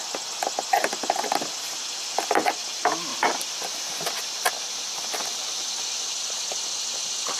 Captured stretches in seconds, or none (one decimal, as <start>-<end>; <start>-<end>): 0.0-3.1; 4.5-5.2; 5.8-7.4

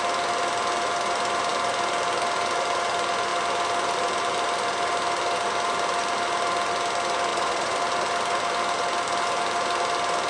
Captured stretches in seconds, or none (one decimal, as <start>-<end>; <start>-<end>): 0.0-7.3; 7.8-10.3

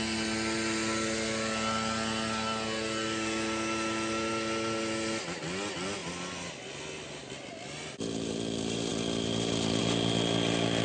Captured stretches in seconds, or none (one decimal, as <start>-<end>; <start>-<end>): 0.0-10.8

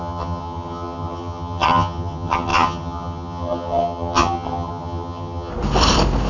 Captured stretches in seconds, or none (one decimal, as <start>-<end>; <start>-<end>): 5.5-6.3

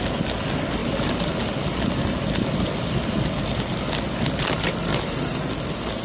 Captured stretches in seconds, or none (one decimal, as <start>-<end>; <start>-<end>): 0.0-0.8; 3.6-6.0

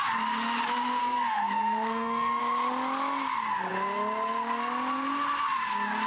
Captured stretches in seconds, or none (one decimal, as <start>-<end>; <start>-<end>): 0.0-1.0; 2.4-6.1

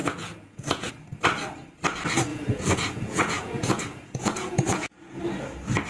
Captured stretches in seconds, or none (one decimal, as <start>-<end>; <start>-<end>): 0.9-2.3; 5.2-5.9

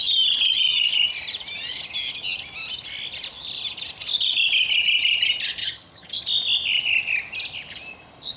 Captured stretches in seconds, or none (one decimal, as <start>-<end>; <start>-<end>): 0.0-5.6; 6.2-8.4